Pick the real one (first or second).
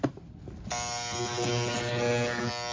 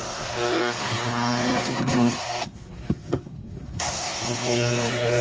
first